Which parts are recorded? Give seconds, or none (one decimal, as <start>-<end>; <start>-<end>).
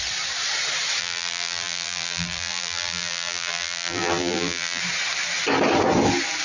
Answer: 0.0-1.0; 4.8-6.4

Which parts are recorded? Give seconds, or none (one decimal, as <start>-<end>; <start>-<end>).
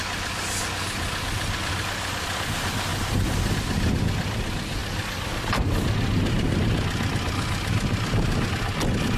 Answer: 0.0-2.9; 3.5-9.2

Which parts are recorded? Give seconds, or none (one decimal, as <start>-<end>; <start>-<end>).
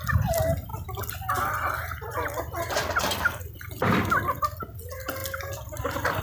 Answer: 0.0-0.7; 3.4-5.2